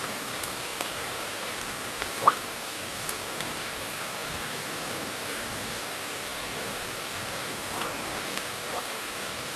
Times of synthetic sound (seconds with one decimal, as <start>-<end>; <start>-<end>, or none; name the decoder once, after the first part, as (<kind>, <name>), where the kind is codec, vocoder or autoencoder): 0.0-9.6 (codec, DAC)